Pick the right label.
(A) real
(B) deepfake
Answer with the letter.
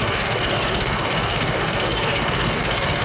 B